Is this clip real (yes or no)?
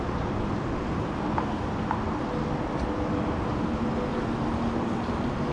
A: yes